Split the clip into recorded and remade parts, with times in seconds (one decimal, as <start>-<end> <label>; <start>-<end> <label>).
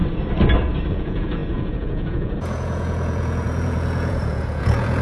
0.0-0.9 recorded; 0.9-5.0 remade